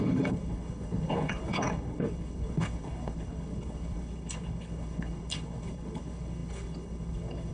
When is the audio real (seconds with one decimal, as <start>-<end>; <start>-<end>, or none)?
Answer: none